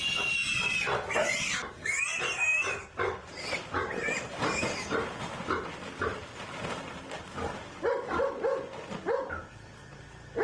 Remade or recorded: recorded